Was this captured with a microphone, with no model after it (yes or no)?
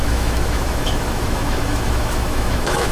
no